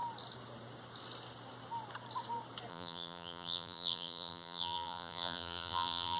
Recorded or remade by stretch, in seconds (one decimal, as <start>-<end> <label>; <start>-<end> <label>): 0.0-2.7 recorded; 2.7-6.2 remade